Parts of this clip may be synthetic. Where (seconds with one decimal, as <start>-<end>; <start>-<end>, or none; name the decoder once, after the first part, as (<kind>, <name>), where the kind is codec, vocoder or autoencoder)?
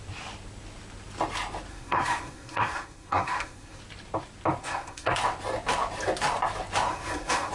1.7-3.8 (codec, SNAC); 4.6-5.1; 6.9-7.5